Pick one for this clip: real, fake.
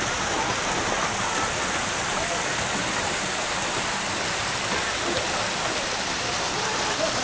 real